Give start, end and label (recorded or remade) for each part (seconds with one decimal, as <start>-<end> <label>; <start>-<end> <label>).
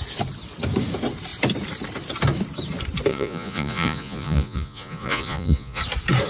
0.0-3.1 recorded; 3.1-5.8 remade; 5.8-6.3 recorded